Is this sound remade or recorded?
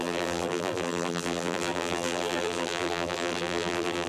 remade